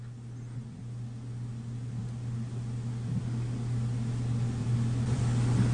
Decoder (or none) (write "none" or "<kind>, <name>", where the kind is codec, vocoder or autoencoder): none